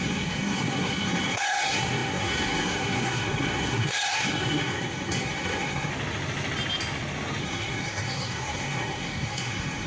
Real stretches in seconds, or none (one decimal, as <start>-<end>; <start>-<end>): 5.9-7.4